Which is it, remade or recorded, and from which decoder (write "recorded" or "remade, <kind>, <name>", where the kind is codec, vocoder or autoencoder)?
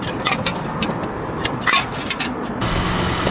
recorded